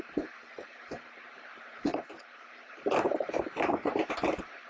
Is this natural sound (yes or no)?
no